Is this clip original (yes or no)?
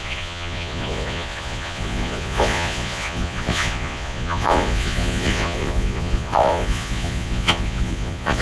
no